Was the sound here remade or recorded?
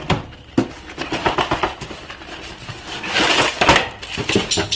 recorded